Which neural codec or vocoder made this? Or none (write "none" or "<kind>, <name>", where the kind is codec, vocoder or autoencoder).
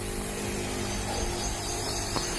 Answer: none